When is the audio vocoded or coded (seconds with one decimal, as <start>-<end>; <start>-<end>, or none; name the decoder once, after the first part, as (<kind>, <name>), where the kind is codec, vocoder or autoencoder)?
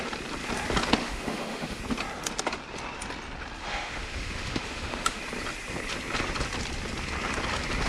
1.0-1.8 (autoencoder, DAC-VAE); 3.6-5.2